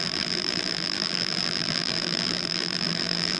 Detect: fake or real fake